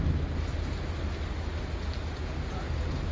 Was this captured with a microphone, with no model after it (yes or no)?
yes